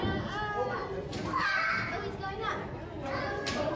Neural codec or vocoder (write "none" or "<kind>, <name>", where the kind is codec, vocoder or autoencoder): none